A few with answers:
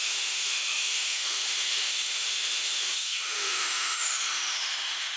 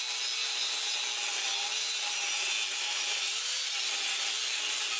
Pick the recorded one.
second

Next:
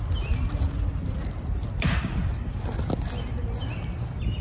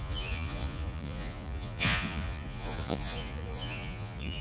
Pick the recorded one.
first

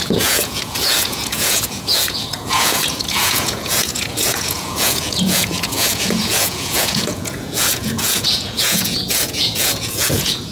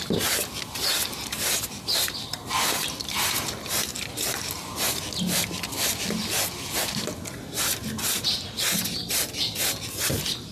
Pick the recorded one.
second